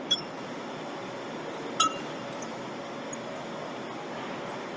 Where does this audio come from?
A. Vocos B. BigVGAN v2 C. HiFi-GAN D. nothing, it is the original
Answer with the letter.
D